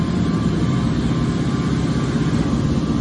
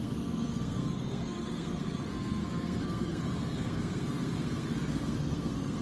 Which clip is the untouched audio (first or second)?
first